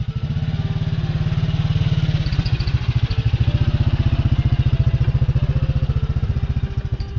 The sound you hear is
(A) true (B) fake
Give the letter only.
A